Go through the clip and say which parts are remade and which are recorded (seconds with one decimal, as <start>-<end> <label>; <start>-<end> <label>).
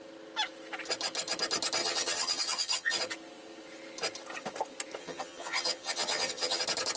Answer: 0.0-1.8 recorded; 1.8-3.0 remade; 3.0-5.0 recorded; 5.0-6.6 remade; 6.6-7.0 recorded